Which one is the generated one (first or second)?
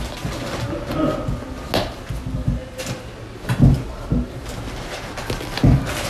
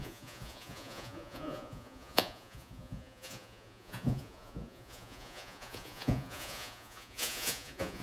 second